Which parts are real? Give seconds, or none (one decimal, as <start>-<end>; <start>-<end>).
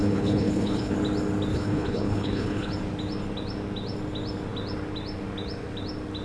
0.9-1.5; 2.7-6.2